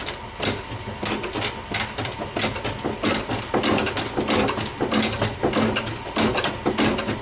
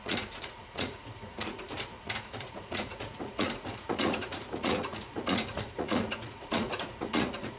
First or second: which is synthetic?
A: second